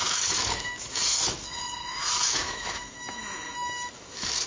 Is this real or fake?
fake